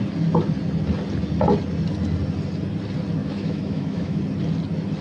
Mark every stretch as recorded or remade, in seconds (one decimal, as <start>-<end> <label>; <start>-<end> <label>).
0.0-3.2 recorded; 3.2-4.2 remade; 4.2-5.0 recorded